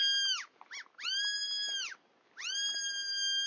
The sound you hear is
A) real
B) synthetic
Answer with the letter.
A